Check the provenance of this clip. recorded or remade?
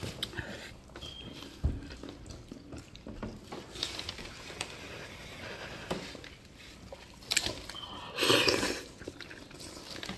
recorded